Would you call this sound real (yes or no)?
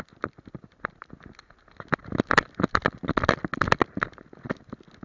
yes